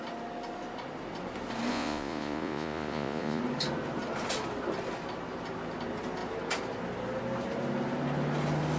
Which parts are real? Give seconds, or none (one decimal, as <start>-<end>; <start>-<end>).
0.0-1.7; 3.4-8.8

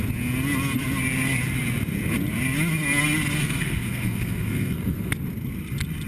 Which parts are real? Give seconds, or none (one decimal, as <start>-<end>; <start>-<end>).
0.0-3.4; 5.1-6.1